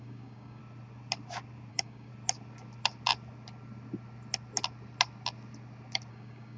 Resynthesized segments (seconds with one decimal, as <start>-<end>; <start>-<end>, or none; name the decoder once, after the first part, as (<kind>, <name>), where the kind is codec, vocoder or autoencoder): 0.0-0.6 (codec, DAC); 1.7-2.1; 6.1-6.6